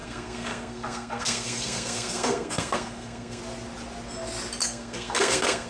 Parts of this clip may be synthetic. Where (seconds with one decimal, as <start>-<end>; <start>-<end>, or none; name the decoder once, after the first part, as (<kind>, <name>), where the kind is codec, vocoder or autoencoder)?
0.0-3.4 (codec, SNAC); 4.6-5.7